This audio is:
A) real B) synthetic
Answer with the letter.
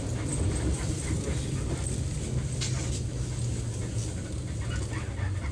A